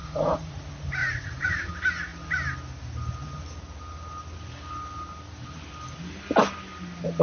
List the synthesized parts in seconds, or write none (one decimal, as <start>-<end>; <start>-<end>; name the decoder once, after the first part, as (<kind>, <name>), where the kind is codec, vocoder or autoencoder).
0.0-0.6 (vocoder, Vocos); 1.0-1.7